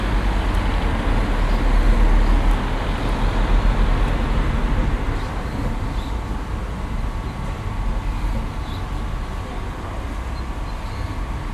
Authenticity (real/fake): real